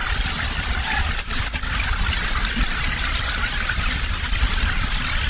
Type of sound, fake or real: fake